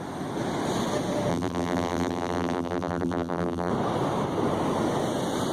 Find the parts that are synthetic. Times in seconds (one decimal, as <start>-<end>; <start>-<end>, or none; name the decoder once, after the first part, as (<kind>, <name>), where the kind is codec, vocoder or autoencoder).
1.3-3.7 (vocoder, BigVGAN v2)